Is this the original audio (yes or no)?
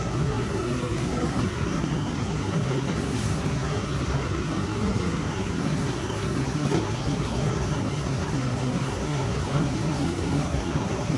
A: no